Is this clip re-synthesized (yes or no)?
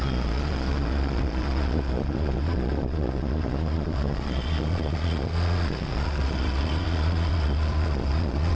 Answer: yes